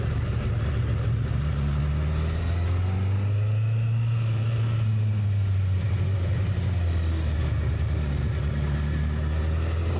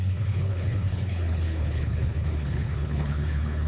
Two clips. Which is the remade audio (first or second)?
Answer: second